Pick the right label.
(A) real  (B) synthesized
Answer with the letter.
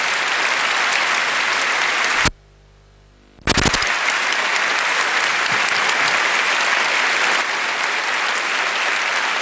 A